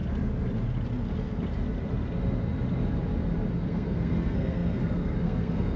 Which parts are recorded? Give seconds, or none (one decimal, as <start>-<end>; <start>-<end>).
0.0-3.5